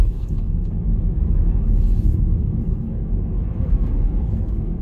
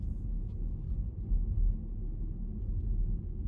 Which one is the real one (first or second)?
second